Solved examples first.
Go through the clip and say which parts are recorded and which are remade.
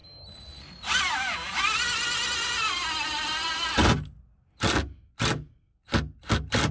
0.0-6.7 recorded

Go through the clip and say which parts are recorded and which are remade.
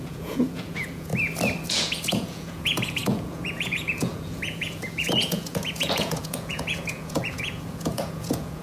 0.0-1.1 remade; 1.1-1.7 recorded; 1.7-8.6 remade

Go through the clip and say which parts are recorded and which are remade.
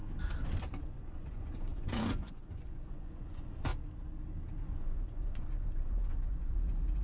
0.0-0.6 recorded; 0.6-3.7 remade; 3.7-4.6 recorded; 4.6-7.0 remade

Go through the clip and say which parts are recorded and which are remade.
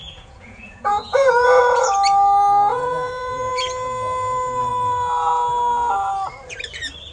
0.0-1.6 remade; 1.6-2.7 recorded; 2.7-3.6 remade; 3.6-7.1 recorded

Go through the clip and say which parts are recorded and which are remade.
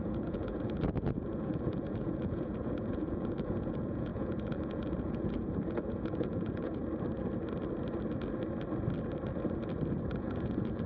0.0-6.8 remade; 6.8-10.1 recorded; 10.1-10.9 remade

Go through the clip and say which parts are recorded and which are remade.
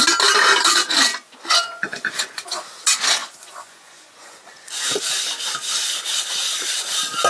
0.0-1.1 recorded; 1.1-2.8 remade; 2.8-3.2 recorded; 3.2-5.0 remade; 5.0-7.3 recorded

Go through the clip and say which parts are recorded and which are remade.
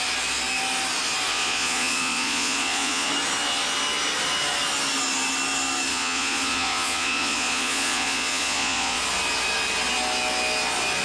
0.0-1.3 recorded; 1.3-3.1 remade; 3.1-5.9 recorded; 5.9-9.0 remade; 9.0-11.0 recorded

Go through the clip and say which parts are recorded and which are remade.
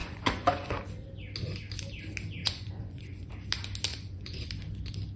0.0-0.8 remade; 0.8-2.4 recorded; 2.4-3.3 remade; 3.3-3.9 recorded; 3.9-4.5 remade; 4.5-5.2 recorded